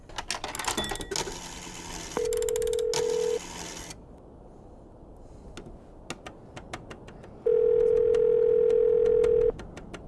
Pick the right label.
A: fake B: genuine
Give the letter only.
B